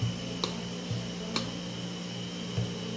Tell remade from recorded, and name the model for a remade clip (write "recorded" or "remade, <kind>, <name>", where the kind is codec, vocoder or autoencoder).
recorded